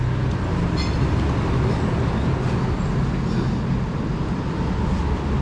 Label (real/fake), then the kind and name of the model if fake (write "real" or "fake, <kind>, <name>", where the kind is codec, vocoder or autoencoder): real